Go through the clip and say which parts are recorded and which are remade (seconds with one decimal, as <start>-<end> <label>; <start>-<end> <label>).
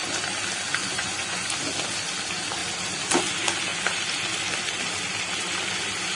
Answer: 0.0-0.8 recorded; 0.8-1.5 remade; 1.5-6.1 recorded